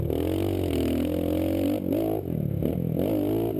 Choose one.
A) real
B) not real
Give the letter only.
A